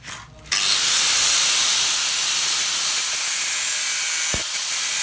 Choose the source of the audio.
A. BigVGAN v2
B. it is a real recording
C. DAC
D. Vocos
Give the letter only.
B